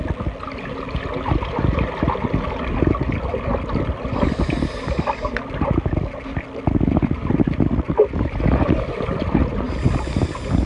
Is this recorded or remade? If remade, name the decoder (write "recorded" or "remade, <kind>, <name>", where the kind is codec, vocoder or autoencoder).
recorded